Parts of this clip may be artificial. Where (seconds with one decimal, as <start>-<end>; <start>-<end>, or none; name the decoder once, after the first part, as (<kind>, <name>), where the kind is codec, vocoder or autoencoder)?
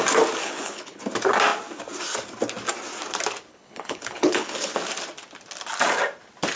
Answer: 0.4-1.0 (codec, HILCodec); 3.5-4.7